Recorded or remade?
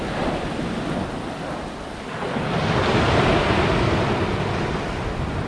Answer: recorded